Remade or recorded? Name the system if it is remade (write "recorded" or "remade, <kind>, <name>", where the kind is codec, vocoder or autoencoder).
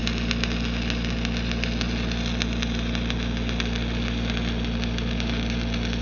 recorded